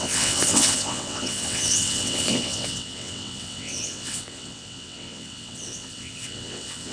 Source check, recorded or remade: remade